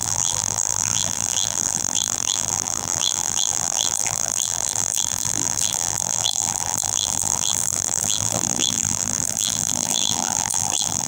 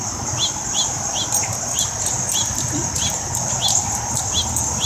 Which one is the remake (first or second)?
first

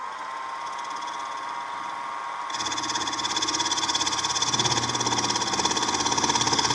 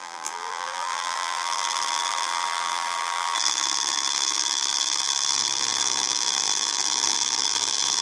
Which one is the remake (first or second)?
second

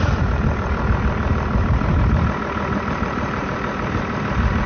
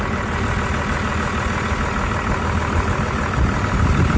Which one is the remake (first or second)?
first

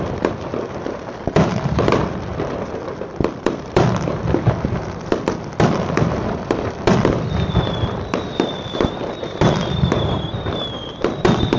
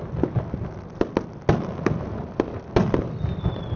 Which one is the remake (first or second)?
first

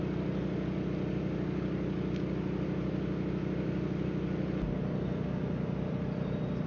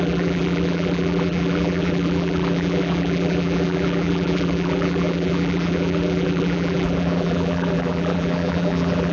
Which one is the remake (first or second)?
second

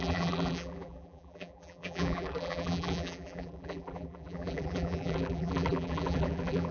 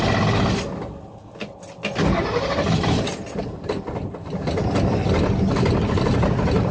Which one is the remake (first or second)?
first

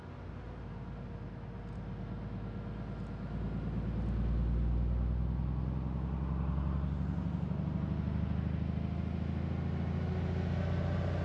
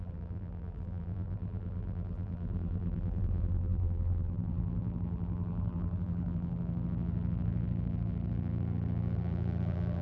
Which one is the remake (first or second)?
second